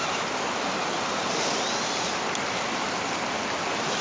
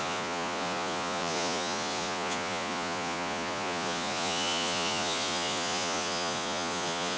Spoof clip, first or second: second